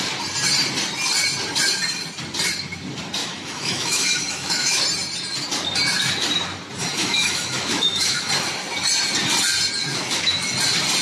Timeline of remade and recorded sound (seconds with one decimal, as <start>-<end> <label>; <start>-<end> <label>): 0.0-3.2 recorded; 3.2-4.8 remade; 4.8-7.0 recorded; 7.0-8.3 remade; 8.3-9.9 recorded; 9.9-10.5 remade; 10.5-11.0 recorded